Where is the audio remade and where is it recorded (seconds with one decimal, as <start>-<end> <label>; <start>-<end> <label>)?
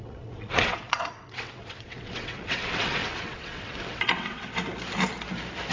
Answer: 0.0-4.6 remade; 4.6-5.7 recorded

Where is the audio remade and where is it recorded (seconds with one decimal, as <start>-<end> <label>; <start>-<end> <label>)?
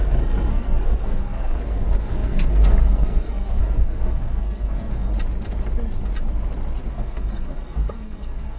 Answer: 0.0-5.1 remade; 5.1-6.9 recorded; 6.9-8.6 remade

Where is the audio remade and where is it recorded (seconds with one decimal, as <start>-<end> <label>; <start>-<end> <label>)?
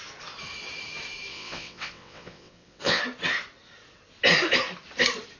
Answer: 0.0-1.3 recorded; 1.3-3.0 remade; 3.0-5.4 recorded